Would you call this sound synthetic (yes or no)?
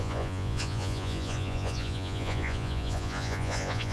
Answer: yes